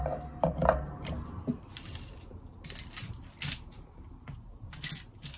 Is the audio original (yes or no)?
yes